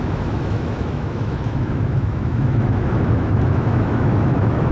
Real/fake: fake